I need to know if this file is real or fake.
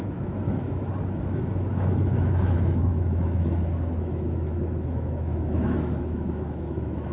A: fake